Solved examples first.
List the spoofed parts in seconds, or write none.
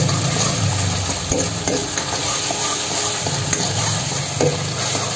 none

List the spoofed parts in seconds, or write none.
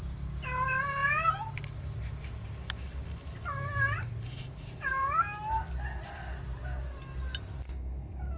none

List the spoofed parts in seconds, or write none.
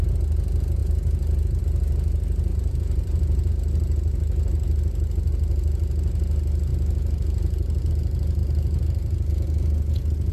2.5-3.5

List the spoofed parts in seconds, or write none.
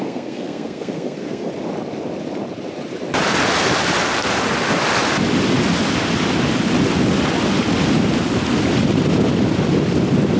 0.0-1.5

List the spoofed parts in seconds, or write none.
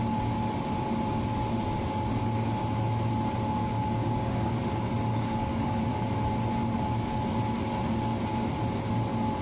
3.6-4.5; 5.1-5.8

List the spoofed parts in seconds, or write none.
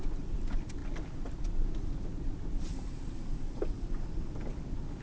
none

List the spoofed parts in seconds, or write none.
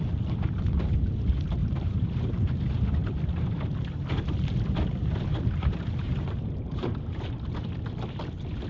1.6-2.6; 5.3-7.5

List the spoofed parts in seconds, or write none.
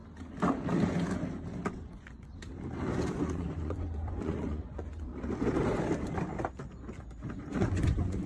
1.7-2.3; 3.1-5.1; 7.3-8.3